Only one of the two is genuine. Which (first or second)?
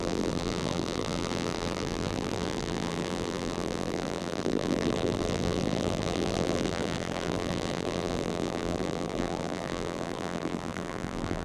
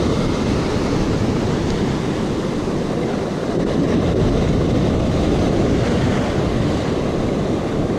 second